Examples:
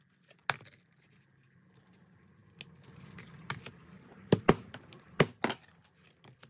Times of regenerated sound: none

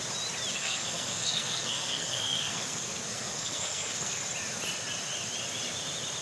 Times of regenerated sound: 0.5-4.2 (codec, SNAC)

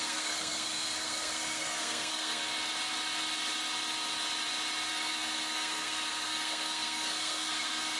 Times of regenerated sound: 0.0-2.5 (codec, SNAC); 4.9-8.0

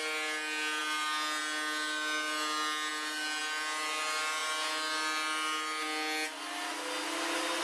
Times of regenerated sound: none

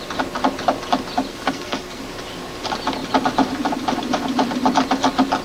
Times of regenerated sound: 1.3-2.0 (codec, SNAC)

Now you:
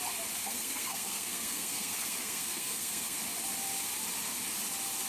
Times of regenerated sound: 0.4-3.2 (codec, SNAC)

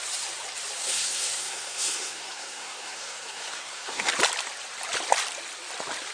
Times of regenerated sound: 0.8-4.1 (codec, SNAC)

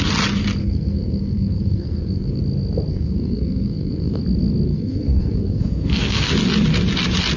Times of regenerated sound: 0.6-2.4 (codec, SNAC); 2.9-4.2; 4.7-6.3